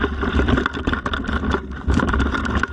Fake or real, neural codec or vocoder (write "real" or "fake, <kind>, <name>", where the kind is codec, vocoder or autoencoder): real